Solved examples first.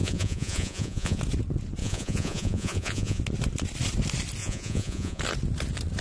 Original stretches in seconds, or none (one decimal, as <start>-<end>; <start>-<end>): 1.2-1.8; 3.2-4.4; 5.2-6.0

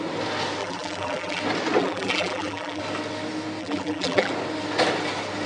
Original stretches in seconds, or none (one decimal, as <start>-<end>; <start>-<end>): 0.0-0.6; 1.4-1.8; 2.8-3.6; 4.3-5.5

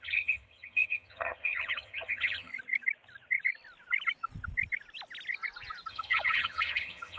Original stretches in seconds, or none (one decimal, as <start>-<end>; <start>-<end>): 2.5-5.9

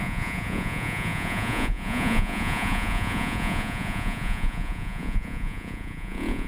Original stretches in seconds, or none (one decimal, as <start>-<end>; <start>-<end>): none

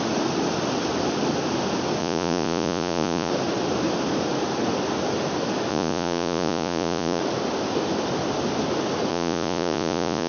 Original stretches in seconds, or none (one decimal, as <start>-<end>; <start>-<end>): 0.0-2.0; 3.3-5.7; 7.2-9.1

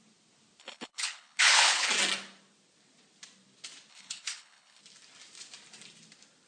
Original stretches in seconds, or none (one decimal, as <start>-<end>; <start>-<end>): 0.0-0.6; 1.9-3.9; 4.8-6.5

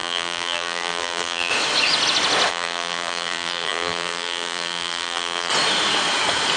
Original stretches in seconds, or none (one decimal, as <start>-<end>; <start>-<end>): 1.5-2.5; 5.5-6.6